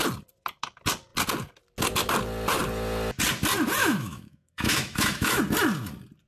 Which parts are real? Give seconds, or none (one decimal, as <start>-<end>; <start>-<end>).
0.0-3.8; 5.4-6.3